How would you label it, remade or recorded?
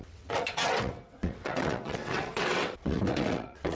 remade